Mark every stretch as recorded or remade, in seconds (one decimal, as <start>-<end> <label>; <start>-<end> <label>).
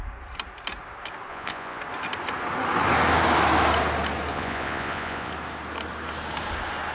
0.0-1.3 recorded; 1.3-1.8 remade; 1.8-4.3 recorded; 4.3-5.3 remade; 5.3-6.9 recorded